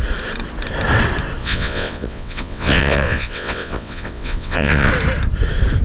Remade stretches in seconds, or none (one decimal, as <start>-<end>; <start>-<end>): 1.4-4.9